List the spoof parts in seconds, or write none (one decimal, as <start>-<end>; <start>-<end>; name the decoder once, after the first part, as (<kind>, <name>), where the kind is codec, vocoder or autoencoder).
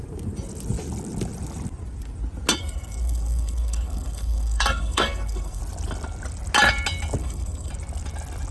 2.6-5.6 (codec, SNAC); 7.2-7.7